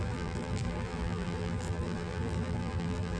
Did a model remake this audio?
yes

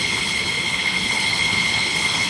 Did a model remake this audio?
yes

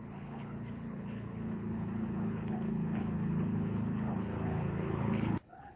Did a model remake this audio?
yes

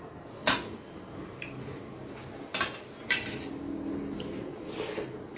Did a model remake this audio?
no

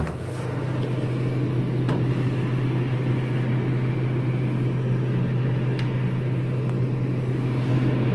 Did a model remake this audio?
no